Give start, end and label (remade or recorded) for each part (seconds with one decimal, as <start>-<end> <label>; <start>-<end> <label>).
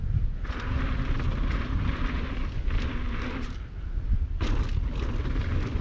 0.0-5.8 recorded